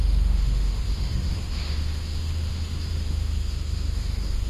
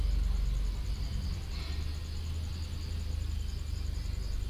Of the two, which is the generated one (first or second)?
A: first